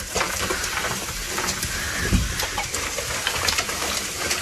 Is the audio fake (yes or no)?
yes